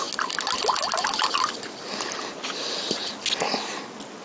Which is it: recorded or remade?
recorded